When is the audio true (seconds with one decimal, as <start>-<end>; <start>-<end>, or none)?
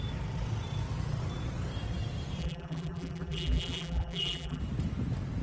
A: 0.0-2.4; 4.6-5.4